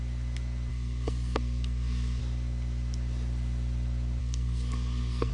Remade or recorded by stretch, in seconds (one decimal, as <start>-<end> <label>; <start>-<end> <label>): 0.0-0.7 recorded; 0.7-2.2 remade; 2.2-4.2 recorded; 4.2-5.3 remade